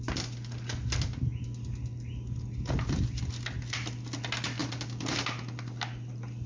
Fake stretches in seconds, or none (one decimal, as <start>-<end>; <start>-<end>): none